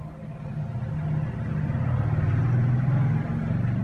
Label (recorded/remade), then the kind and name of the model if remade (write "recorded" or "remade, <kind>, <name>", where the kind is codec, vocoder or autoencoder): recorded